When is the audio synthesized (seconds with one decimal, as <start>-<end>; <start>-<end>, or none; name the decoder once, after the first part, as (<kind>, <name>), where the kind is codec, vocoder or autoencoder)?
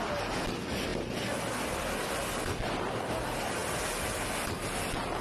none